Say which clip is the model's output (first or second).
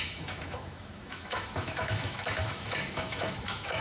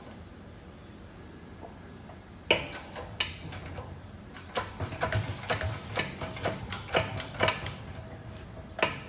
first